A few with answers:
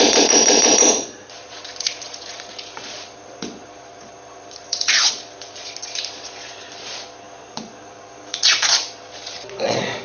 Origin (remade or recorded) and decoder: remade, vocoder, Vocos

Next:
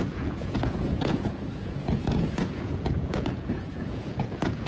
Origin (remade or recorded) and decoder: remade, vocoder, Vocos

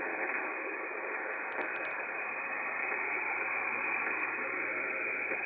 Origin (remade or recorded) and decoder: remade, vocoder, BigVGAN v2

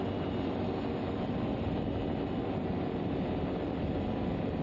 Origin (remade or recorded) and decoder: remade, vocoder, BigVGAN v2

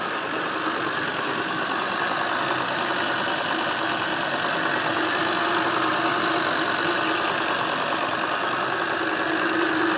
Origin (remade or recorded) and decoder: recorded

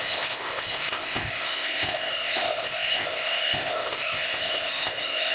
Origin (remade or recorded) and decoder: remade, codec, ZipCodec